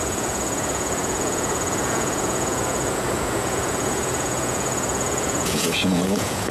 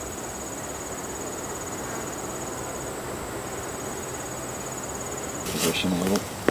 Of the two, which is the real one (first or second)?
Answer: second